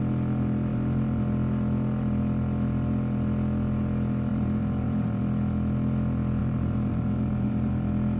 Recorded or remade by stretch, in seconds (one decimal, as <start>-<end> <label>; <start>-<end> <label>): 0.0-0.7 recorded; 0.7-1.2 remade; 1.2-4.3 recorded; 4.3-5.2 remade; 5.2-6.4 recorded; 6.4-7.7 remade; 7.7-8.2 recorded